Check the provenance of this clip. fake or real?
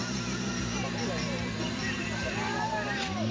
real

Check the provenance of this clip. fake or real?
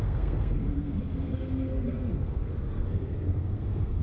fake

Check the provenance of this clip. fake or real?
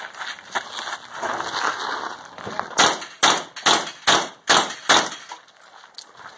real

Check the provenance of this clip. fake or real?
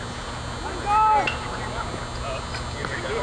real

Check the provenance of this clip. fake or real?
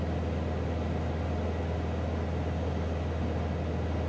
real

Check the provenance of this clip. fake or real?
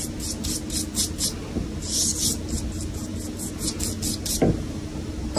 real